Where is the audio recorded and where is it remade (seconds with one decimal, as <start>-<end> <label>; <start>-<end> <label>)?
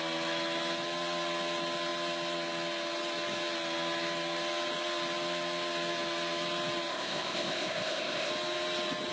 0.0-6.9 recorded; 6.9-8.3 remade; 8.3-9.1 recorded